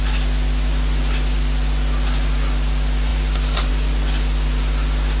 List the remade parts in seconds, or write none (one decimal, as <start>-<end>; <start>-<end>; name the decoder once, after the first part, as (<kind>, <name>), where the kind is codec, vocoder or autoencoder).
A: none